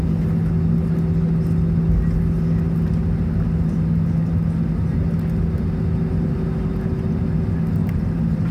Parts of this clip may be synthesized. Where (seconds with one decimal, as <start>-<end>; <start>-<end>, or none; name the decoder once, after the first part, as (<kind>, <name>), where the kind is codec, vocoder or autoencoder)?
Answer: none